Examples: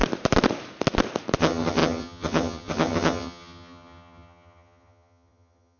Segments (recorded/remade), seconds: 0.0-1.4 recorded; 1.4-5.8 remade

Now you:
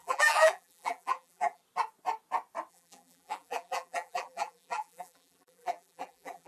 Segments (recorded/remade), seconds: 0.0-1.6 remade; 1.6-2.7 recorded; 2.7-6.5 remade

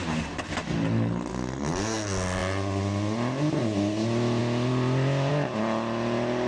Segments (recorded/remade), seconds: 0.0-6.5 recorded

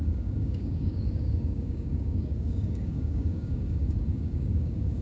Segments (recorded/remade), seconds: 0.0-5.0 remade

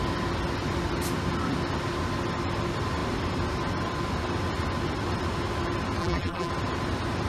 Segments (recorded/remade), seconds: 0.0-6.0 recorded; 6.0-6.5 remade; 6.5-7.3 recorded